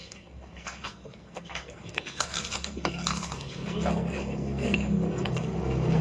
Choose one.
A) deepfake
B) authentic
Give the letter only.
A